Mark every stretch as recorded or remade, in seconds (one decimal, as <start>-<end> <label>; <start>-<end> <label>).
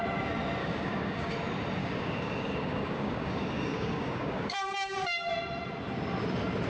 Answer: 0.0-0.6 recorded; 0.6-1.3 remade; 1.3-1.8 recorded; 1.8-5.3 remade; 5.3-6.7 recorded